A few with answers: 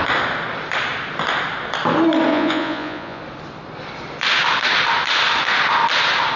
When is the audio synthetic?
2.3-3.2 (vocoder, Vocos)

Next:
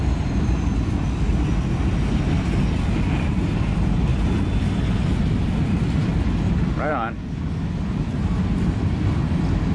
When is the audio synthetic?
none

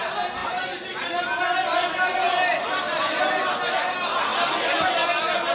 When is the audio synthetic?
none

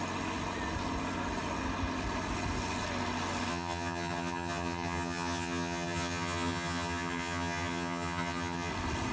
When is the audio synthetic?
3.5-8.7 (vocoder, HiFi-GAN)